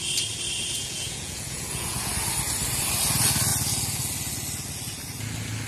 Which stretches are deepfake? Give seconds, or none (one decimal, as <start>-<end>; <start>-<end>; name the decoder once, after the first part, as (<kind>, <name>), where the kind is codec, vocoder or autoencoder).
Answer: 0.8-2.1 (vocoder, Vocos)